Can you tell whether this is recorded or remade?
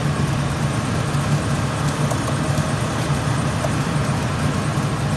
recorded